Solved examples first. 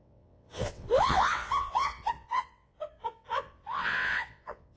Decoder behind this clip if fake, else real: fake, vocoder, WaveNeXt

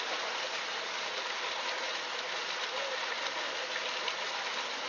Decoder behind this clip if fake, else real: real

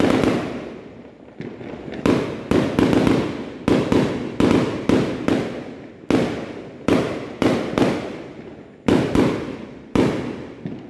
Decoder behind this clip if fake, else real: real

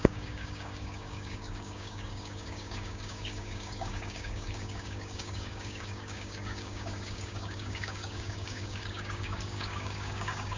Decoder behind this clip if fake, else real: fake, codec, DAC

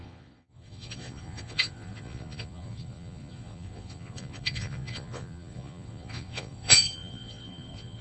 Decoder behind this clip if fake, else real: fake, vocoder, Vocos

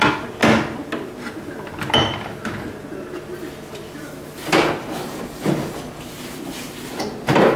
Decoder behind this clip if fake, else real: real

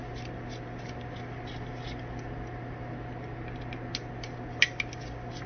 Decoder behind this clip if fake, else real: real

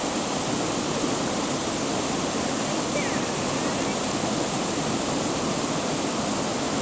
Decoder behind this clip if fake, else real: real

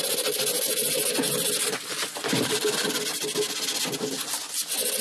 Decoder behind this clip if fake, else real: real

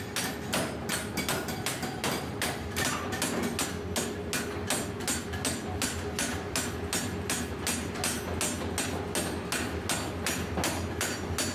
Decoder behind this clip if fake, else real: real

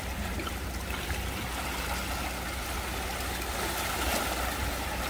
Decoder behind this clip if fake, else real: real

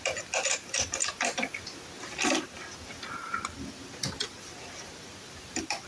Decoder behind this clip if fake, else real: real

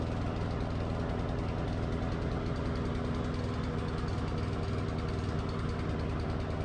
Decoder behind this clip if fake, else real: real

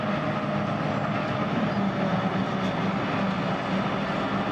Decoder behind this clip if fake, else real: real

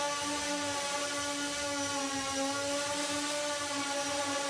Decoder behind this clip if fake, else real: real